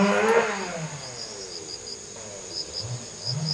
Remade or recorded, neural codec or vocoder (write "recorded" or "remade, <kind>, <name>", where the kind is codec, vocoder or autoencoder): recorded